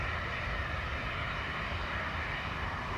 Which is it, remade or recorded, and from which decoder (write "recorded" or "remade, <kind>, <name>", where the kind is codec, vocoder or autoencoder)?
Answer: recorded